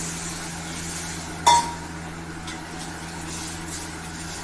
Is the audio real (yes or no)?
yes